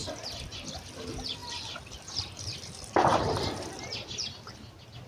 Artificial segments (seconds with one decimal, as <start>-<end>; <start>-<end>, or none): 0.0-0.5; 1.4-4.5